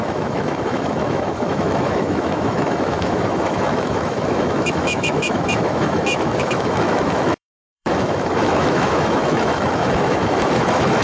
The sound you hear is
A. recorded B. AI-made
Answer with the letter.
B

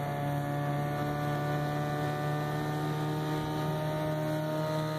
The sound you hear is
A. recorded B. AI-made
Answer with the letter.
A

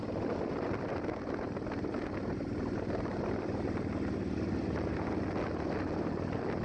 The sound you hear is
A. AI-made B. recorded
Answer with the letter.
B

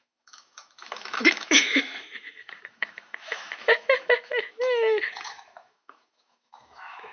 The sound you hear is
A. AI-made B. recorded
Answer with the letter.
A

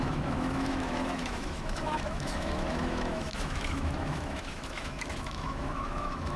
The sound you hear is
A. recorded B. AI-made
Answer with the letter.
B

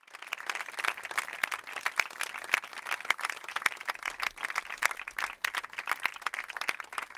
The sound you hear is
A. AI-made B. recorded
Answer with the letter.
B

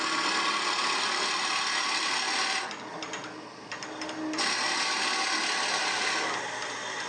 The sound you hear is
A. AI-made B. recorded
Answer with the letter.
B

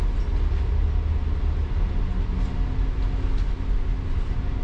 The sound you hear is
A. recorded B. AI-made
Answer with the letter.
A